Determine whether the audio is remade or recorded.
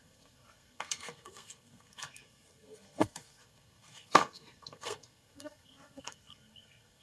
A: remade